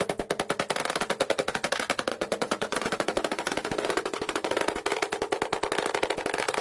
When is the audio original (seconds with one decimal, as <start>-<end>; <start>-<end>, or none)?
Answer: 0.0-2.1; 4.6-6.6